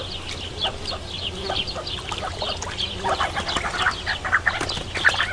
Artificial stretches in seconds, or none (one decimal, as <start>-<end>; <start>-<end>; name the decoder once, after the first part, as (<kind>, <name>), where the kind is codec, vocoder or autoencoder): none